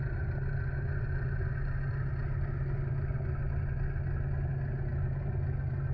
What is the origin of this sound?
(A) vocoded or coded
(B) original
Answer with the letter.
B